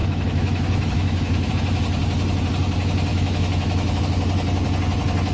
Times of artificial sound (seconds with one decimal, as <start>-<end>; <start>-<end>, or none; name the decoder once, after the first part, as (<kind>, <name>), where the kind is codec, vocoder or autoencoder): 0.0-1.5 (autoencoder, DAC-VAE); 3.1-4.0